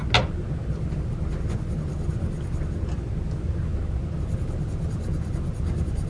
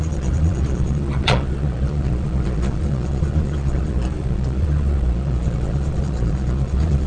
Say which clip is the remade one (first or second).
second